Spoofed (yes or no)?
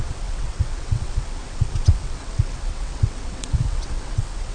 yes